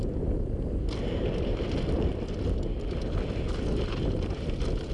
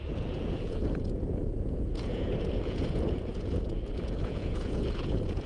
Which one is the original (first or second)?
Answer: first